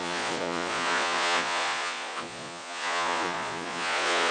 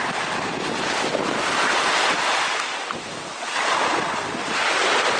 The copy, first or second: first